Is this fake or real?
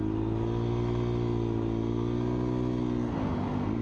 real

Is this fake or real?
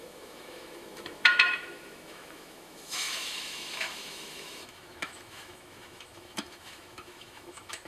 fake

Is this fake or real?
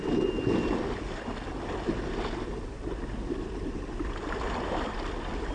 real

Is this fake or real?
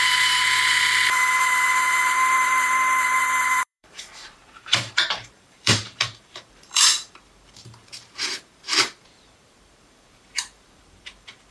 fake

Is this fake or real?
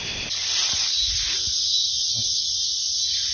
real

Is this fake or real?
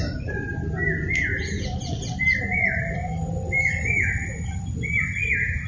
real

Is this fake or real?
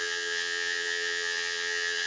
fake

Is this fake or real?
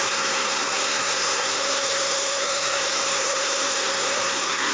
fake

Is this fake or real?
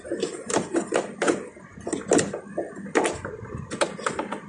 real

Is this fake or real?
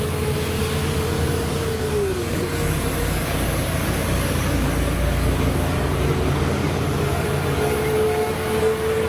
fake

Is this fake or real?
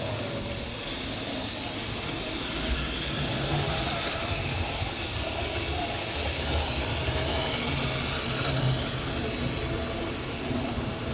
real